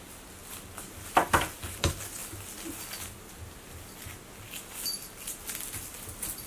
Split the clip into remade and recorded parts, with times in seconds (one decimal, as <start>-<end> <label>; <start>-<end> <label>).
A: 0.0-6.5 recorded